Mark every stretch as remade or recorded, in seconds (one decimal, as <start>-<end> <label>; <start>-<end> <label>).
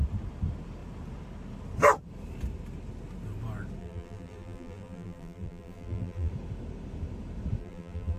0.0-3.8 recorded; 3.8-6.3 remade; 6.3-7.6 recorded; 7.6-8.2 remade